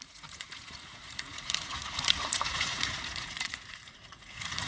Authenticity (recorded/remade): remade